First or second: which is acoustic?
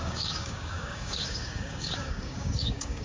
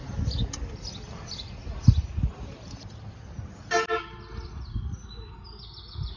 second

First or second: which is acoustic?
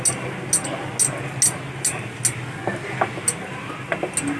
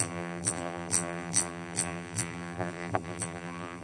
first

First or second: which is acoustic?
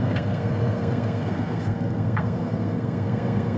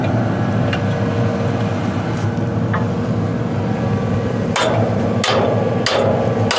second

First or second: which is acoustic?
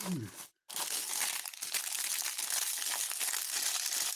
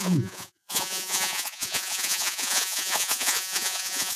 first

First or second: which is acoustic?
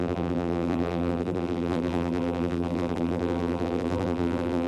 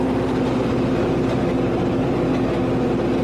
second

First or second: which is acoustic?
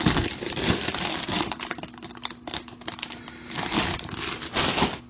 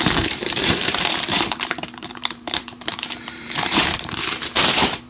first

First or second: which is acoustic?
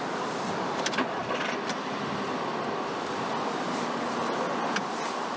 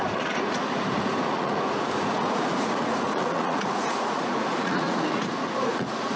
first